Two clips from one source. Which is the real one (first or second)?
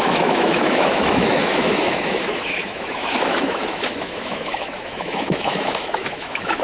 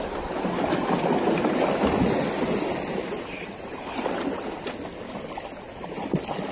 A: second